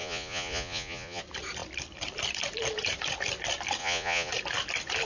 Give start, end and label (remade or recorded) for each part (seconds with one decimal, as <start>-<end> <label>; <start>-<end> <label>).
0.0-1.2 remade; 1.2-3.8 recorded; 3.8-4.3 remade; 4.3-5.0 recorded